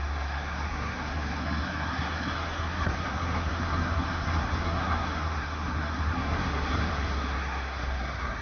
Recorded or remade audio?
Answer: remade